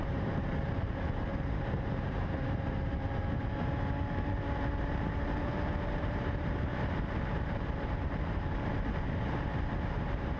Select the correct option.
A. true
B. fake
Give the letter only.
B